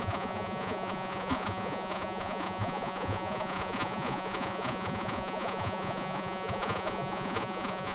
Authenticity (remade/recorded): remade